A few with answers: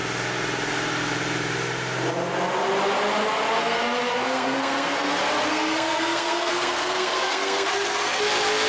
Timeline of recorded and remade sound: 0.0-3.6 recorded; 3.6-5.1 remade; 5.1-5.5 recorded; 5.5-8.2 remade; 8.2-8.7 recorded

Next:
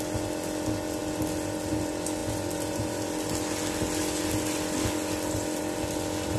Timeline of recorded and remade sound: 0.0-6.4 recorded

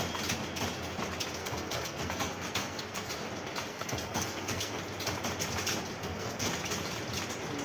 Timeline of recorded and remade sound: 0.0-1.4 recorded; 1.4-3.1 remade; 3.1-3.7 recorded; 3.7-4.8 remade; 4.8-6.0 recorded; 6.0-6.5 remade; 6.5-7.6 recorded

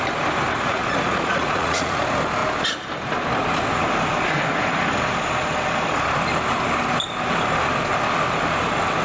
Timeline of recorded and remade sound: 0.0-0.5 recorded; 0.5-2.0 remade; 2.0-9.0 recorded

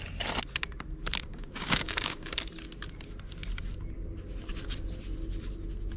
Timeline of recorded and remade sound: 0.0-1.3 recorded; 1.3-2.4 remade; 2.4-6.0 recorded

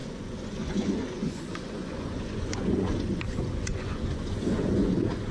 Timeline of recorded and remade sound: 0.0-5.3 remade

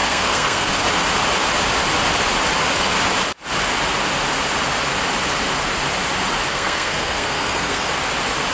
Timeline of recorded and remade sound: 0.0-0.7 remade; 0.7-6.5 recorded; 6.5-7.9 remade; 7.9-8.5 recorded